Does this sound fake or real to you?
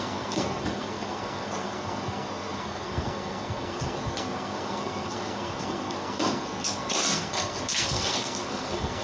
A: fake